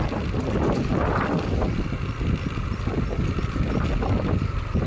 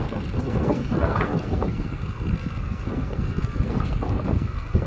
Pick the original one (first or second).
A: first